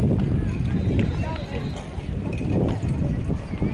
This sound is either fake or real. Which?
real